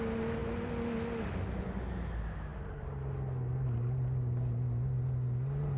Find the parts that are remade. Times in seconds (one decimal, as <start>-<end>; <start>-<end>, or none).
none

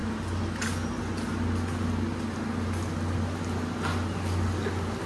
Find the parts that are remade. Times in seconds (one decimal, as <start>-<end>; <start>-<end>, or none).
none